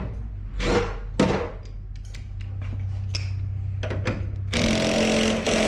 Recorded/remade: recorded